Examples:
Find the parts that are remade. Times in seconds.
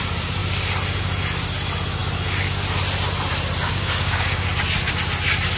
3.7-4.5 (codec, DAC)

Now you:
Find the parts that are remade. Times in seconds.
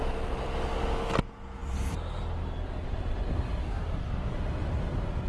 3.6-4.3 (codec, DAC)